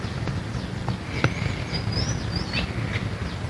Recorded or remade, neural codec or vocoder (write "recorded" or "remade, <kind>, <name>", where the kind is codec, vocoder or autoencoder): recorded